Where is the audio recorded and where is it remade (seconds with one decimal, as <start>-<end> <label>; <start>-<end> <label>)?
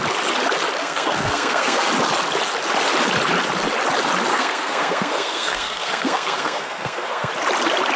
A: 0.0-0.8 recorded; 0.8-1.9 remade; 1.9-4.3 recorded; 4.3-7.3 remade; 7.3-8.0 recorded